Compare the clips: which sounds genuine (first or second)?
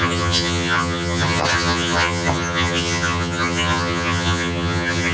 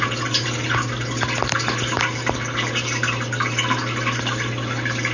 second